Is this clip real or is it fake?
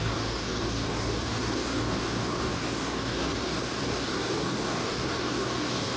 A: fake